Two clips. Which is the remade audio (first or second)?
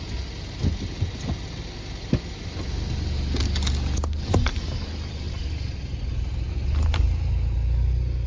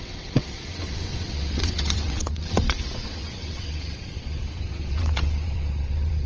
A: second